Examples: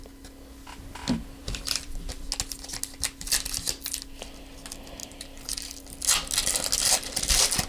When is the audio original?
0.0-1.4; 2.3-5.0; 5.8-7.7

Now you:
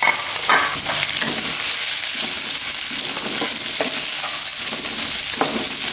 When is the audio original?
0.0-5.9

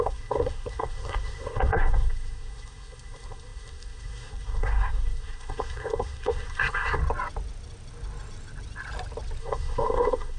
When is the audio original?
7.0-9.4

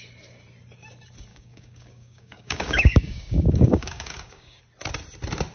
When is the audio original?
0.0-1.3; 4.6-5.5

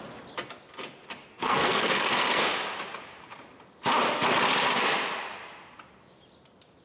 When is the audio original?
0.0-1.3; 2.4-6.8

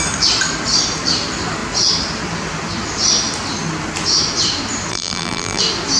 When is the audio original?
0.0-4.9; 5.6-6.0

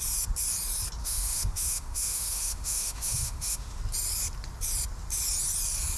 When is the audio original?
0.0-1.0; 3.8-6.0

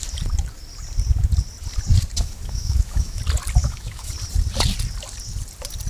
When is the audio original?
0.0-2.2; 3.2-3.6; 4.1-5.9